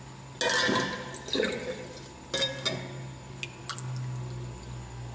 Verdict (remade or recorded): recorded